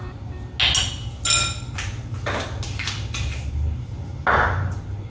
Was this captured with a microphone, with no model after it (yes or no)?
yes